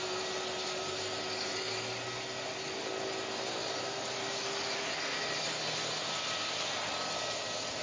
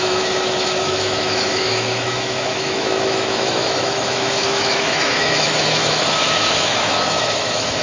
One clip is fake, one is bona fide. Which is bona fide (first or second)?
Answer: first